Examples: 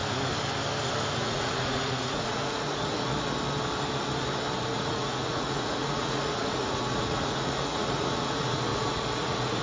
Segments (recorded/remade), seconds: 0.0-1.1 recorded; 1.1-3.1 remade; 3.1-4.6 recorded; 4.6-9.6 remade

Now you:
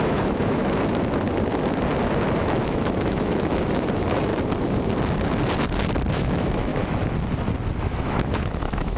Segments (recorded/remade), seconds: 0.0-0.6 remade; 0.6-2.4 recorded; 2.4-4.3 remade; 4.3-6.1 recorded; 6.1-6.7 remade; 6.7-7.8 recorded; 7.8-9.0 remade

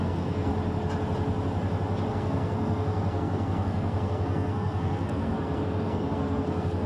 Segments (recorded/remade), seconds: 0.0-0.5 remade; 0.5-2.1 recorded; 2.1-6.9 remade